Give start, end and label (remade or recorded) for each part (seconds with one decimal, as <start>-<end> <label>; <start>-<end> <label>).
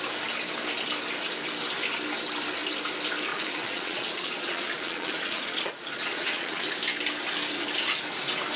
0.0-3.3 recorded; 3.3-6.7 remade; 6.7-8.6 recorded